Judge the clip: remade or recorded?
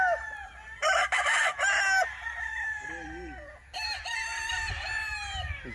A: recorded